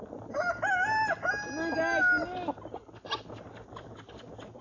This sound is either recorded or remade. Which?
recorded